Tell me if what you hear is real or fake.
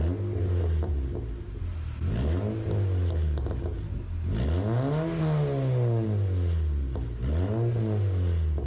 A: real